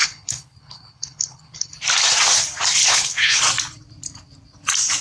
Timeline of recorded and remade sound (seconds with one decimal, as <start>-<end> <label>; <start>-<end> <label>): 0.0-1.7 remade; 1.7-2.8 recorded; 2.8-3.4 remade; 3.4-5.0 recorded